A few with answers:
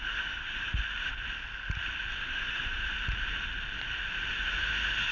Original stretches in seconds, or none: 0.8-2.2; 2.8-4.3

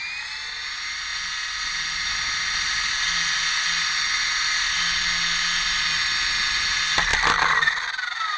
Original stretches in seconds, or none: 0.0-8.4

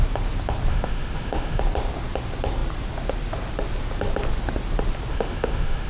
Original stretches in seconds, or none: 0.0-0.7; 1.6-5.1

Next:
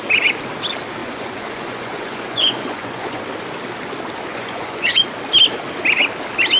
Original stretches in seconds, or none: 0.0-1.0; 3.2-4.3; 5.0-6.6

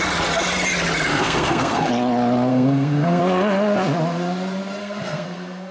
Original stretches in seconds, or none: 0.0-1.1; 1.9-2.5; 3.2-4.8